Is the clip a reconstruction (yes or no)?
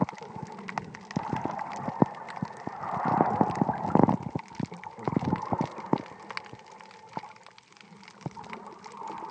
no